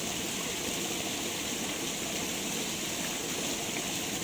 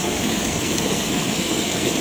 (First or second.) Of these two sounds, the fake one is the second